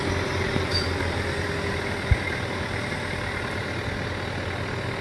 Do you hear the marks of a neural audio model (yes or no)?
no